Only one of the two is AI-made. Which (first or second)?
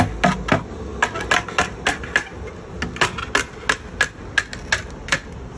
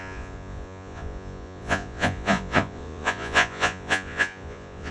second